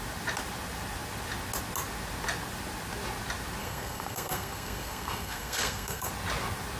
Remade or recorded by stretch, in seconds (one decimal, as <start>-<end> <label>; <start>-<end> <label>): 0.0-3.6 recorded; 3.6-6.1 remade; 6.1-6.8 recorded